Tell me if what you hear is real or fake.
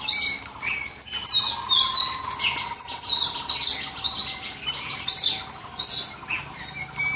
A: real